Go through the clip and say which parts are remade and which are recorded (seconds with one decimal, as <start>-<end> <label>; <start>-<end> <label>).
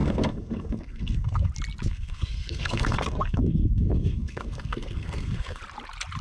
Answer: 0.0-1.5 remade; 1.5-1.9 recorded; 1.9-5.6 remade; 5.6-6.2 recorded